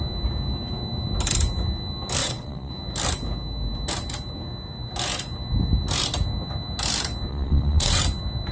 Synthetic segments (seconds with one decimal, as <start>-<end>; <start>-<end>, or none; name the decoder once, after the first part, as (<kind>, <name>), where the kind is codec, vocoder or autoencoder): 2.2-2.7 (vocoder, WaveNeXt); 7.3-8.0

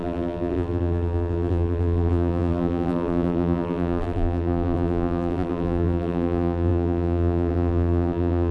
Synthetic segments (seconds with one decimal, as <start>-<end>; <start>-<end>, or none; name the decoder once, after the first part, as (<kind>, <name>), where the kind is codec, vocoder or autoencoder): 0.0-8.5 (vocoder, BigVGAN v2)

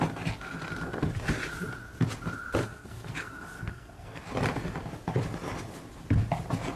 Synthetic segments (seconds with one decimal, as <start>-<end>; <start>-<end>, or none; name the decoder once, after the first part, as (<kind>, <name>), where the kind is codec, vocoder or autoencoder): 2.6-4.3 (codec, SNAC)